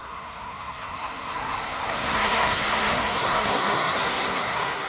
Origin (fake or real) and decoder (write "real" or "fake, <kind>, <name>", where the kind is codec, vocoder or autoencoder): fake, codec, SNAC